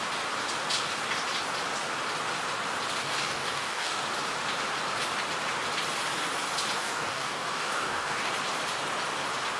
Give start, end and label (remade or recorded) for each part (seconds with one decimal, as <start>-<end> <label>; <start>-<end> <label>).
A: 0.0-3.0 recorded; 3.0-4.0 remade; 4.0-6.8 recorded; 6.8-8.3 remade; 8.3-9.6 recorded